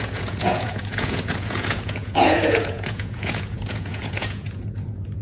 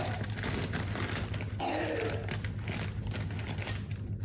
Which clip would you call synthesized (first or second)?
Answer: first